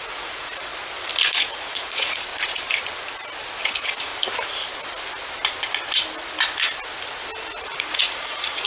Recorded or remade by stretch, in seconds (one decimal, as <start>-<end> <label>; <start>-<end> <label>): 0.0-0.7 remade; 0.7-1.3 recorded; 1.3-2.3 remade; 2.3-3.6 recorded; 3.6-4.1 remade; 4.1-7.6 recorded; 7.6-8.7 remade